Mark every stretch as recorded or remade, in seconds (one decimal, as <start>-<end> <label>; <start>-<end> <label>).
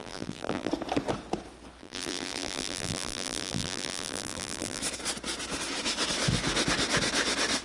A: 0.0-0.7 remade; 0.7-1.8 recorded; 1.8-4.8 remade; 4.8-7.6 recorded